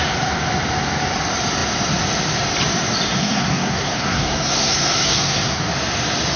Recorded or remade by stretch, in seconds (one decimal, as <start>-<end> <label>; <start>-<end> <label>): 0.0-3.2 recorded; 3.2-5.6 remade; 5.6-6.4 recorded

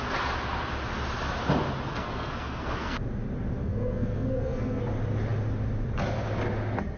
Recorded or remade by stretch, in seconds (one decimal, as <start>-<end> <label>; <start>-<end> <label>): 0.0-1.9 recorded; 1.9-3.0 remade; 3.0-3.6 recorded; 3.6-4.8 remade; 4.8-7.0 recorded

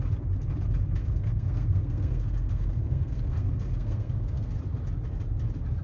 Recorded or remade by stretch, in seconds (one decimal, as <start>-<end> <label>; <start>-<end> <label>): 0.0-1.0 recorded; 1.0-4.5 remade; 4.5-5.8 recorded

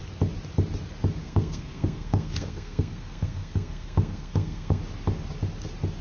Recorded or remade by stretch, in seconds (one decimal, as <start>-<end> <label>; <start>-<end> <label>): 0.0-1.2 recorded; 1.2-4.8 remade; 4.8-6.0 recorded

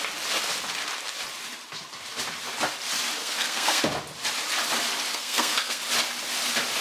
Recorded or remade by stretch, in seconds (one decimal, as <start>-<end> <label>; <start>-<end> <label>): 0.0-3.2 recorded; 3.2-3.8 remade; 3.8-5.1 recorded; 5.1-5.8 remade; 5.8-6.8 recorded

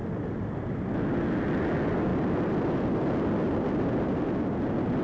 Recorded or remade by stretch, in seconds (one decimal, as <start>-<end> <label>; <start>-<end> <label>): 0.0-5.0 recorded

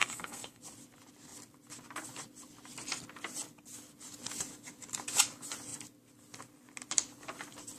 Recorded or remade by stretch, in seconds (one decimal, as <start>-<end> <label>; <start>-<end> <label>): 0.0-0.6 remade; 0.6-7.8 recorded

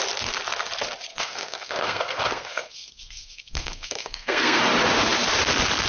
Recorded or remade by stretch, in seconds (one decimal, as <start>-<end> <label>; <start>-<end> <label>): 0.0-1.1 recorded; 1.1-4.6 remade; 4.6-5.9 recorded